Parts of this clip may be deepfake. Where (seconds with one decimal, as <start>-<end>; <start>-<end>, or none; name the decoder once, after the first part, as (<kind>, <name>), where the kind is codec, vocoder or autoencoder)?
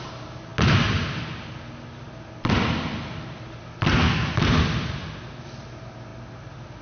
none